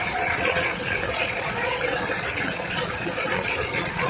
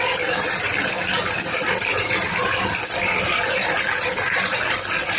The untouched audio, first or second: second